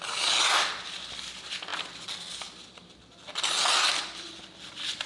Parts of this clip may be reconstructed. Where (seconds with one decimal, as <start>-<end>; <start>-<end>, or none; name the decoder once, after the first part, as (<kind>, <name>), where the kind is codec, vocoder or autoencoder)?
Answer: none